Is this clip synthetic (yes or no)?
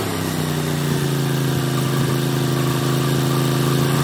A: no